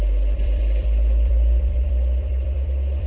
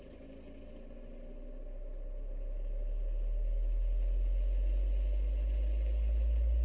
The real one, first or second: second